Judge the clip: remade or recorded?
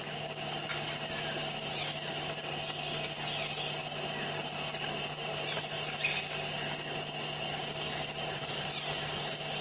recorded